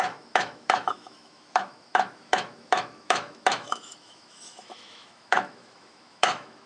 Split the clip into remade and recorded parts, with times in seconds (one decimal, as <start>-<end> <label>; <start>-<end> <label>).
0.0-6.7 remade